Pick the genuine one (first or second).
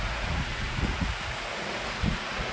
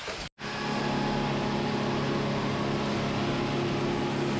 second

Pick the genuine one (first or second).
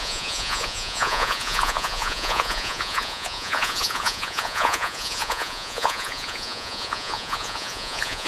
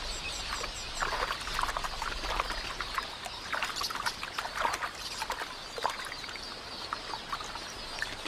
second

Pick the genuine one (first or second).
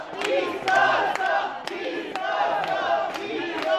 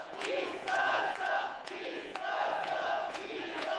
first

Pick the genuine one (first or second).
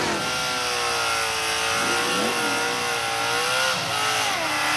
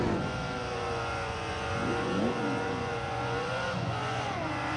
first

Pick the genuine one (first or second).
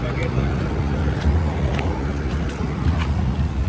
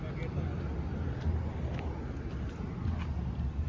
second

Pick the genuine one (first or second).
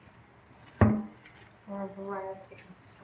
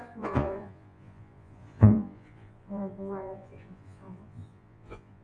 first